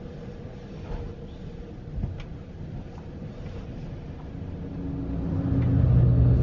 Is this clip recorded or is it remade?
recorded